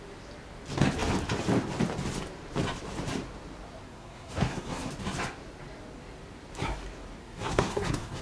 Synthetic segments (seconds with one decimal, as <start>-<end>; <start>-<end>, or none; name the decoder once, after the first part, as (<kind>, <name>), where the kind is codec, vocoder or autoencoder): 3.8-4.9 (codec, SNAC); 7.2-8.2